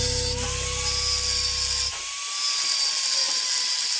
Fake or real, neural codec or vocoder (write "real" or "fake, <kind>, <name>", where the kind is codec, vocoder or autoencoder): real